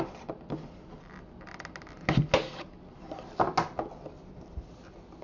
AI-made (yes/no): no